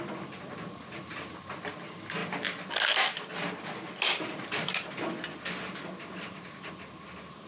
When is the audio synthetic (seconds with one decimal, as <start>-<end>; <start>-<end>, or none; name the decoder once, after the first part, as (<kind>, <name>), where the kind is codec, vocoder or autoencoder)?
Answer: none